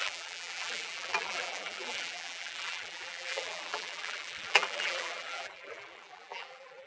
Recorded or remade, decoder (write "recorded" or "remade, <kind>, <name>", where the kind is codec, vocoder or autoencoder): remade, vocoder, BigVGAN v2